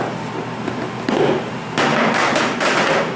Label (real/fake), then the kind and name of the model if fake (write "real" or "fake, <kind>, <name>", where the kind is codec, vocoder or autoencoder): real